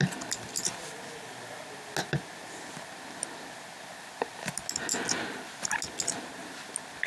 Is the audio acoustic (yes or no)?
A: yes